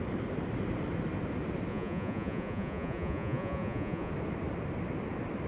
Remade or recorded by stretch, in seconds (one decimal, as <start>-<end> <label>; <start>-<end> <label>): 0.0-1.7 recorded; 1.7-4.1 remade; 4.1-5.5 recorded